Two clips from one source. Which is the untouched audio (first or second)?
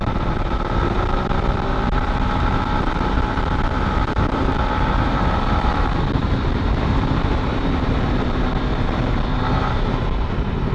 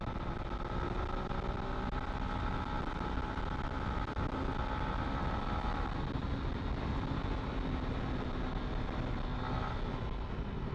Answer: second